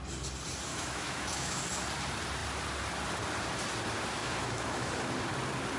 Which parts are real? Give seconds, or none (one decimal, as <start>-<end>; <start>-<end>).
0.0-0.7; 1.6-4.2; 4.9-5.8